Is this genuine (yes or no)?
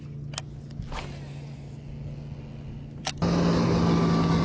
yes